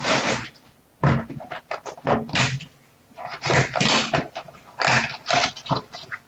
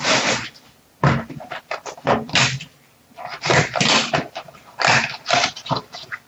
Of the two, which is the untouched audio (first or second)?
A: first